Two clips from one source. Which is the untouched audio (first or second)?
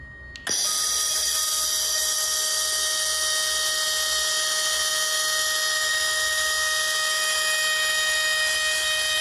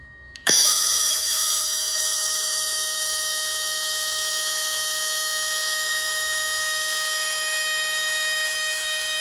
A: first